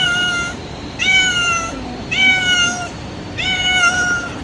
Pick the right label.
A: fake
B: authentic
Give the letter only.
A